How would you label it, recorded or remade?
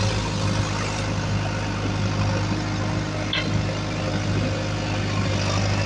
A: recorded